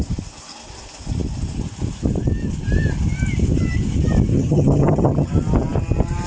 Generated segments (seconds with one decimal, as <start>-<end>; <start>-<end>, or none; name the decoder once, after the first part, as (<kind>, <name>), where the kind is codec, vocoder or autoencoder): 4.3-5.3 (vocoder, HiFi-GAN)